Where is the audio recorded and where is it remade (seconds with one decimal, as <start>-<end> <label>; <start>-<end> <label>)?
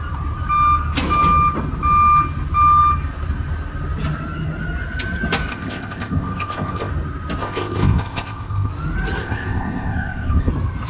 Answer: 0.0-5.5 recorded; 5.5-6.9 remade; 6.9-7.4 recorded; 7.4-8.7 remade; 8.7-9.2 recorded; 9.2-10.5 remade; 10.5-10.9 recorded